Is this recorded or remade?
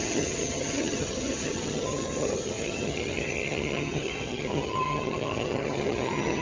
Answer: remade